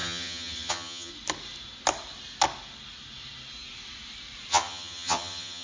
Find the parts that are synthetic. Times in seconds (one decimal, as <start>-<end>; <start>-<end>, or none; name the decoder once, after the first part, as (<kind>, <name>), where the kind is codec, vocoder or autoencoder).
0.0-1.1 (vocoder, HiFi-GAN); 4.5-5.6